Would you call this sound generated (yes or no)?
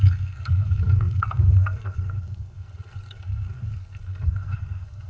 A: yes